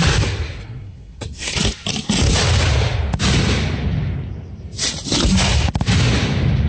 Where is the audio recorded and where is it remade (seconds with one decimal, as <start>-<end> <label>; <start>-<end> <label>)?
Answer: 0.0-0.6 recorded; 0.6-1.5 remade; 1.5-6.7 recorded